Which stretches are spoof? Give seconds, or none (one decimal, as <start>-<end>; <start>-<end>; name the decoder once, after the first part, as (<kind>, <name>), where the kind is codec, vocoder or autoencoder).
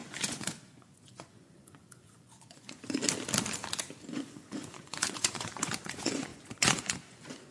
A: 0.0-3.0 (vocoder, Vocos); 4.1-7.5